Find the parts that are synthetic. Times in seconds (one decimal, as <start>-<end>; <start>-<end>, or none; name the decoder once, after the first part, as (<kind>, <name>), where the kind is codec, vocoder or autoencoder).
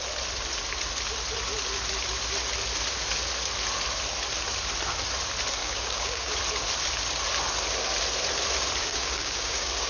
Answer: 5.6-6.3 (codec, DAC); 8.8-9.9